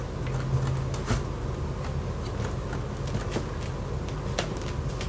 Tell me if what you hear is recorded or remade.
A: recorded